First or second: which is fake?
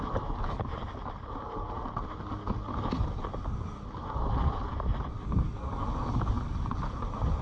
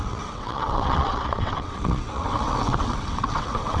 second